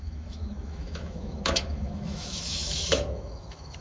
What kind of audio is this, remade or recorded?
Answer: remade